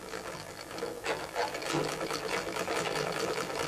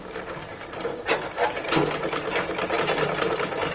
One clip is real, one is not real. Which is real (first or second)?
second